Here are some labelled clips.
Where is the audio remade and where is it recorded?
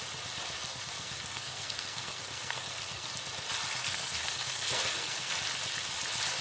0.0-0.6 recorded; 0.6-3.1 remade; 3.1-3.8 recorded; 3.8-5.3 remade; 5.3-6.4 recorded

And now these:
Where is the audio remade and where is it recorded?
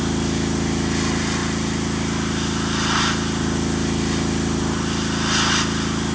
0.0-6.1 recorded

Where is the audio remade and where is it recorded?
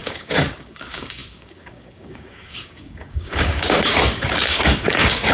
0.0-5.3 remade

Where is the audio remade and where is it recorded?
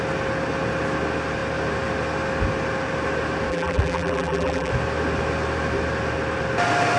0.0-3.5 recorded; 3.5-4.7 remade; 4.7-7.0 recorded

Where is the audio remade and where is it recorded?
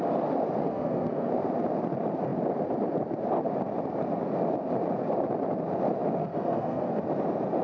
0.0-0.6 recorded; 0.6-1.3 remade; 1.3-6.2 recorded; 6.2-7.0 remade; 7.0-7.6 recorded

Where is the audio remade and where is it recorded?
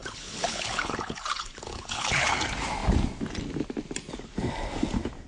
0.0-2.4 remade; 2.4-5.3 recorded